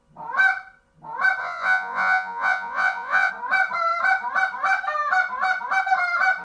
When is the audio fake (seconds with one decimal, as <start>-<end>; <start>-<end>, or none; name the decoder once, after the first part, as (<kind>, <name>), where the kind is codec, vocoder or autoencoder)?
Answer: 1.4-3.3 (vocoder, Vocos)